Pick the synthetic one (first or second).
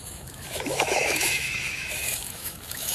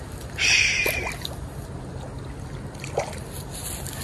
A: first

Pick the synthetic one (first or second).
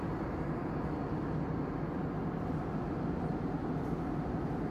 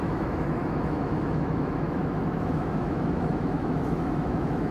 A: second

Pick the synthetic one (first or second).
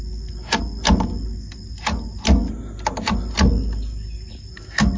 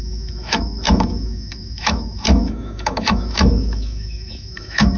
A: second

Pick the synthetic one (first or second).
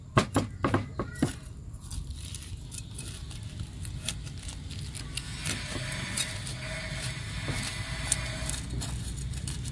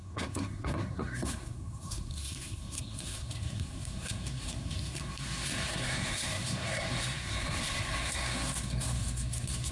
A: second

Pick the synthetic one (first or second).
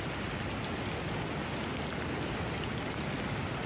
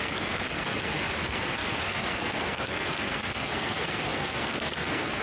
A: second